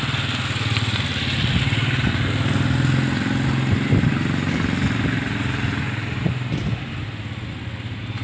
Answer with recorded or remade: recorded